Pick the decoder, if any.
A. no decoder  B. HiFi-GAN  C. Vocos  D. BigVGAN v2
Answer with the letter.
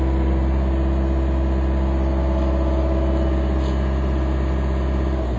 A